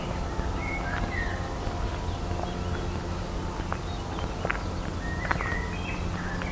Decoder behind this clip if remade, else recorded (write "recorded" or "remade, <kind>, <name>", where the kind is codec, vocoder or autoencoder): recorded